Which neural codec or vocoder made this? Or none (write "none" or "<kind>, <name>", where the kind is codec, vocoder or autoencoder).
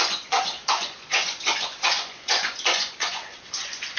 vocoder, Vocos